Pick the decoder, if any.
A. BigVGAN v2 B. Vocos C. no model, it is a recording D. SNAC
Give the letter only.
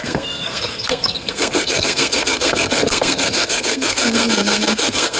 D